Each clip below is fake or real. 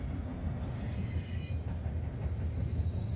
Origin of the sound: real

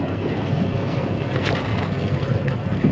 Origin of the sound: fake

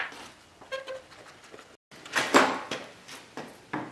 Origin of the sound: real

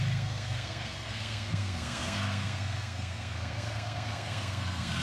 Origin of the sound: fake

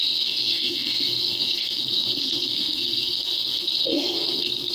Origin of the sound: fake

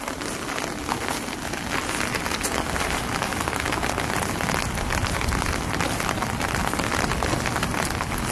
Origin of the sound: real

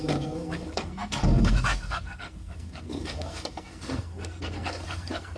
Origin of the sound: fake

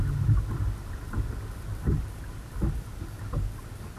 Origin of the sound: real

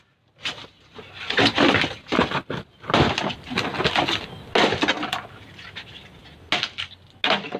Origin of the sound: real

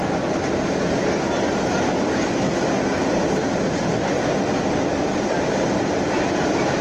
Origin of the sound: real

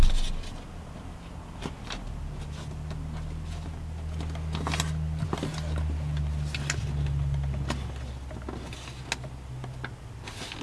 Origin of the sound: real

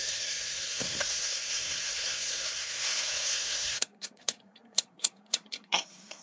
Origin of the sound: fake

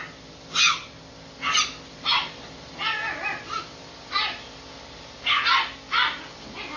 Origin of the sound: real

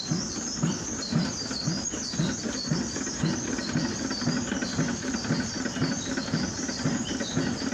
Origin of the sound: real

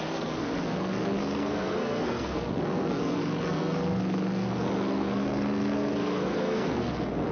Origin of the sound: fake